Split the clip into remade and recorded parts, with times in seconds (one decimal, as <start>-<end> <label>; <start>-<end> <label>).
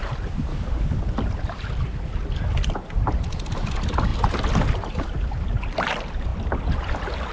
0.0-0.5 recorded; 0.5-1.0 remade; 1.0-7.3 recorded